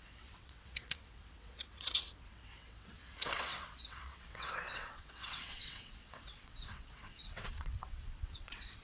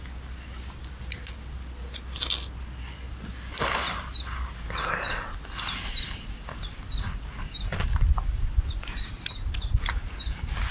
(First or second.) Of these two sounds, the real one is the second